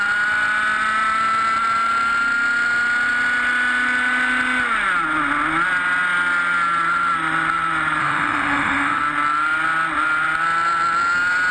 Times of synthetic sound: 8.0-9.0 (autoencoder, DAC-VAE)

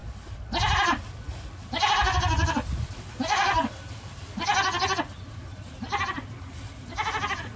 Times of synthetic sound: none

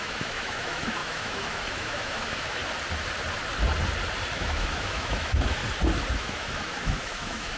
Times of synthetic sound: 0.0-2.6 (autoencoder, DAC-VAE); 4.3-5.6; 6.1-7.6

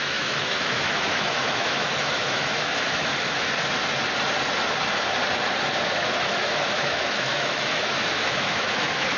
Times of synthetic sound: 0.0-3.1 (autoencoder, DAC-VAE); 5.9-9.2